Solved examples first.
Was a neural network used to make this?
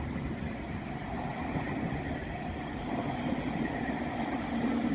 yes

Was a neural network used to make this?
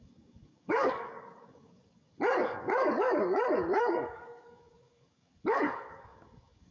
yes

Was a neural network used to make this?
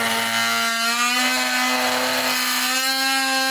no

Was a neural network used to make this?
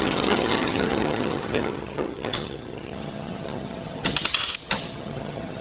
yes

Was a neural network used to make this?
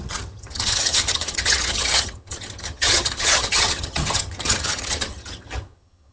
yes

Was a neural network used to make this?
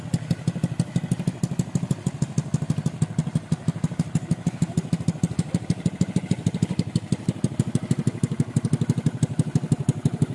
no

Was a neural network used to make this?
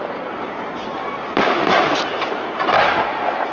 yes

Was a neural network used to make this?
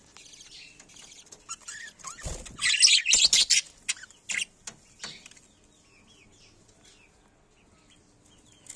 no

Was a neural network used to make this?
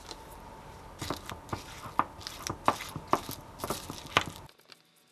no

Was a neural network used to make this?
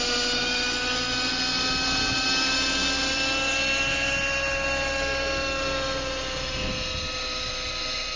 no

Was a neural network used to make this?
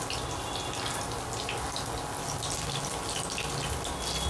no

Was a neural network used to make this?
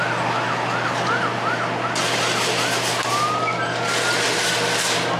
no